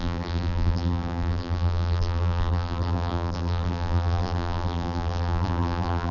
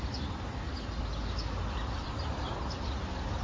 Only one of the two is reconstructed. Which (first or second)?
first